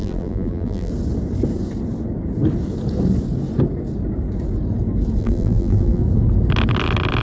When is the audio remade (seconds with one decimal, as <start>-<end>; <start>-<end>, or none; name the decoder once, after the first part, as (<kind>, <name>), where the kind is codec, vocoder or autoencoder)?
0.0-0.9 (vocoder, BigVGAN v2); 5.2-6.0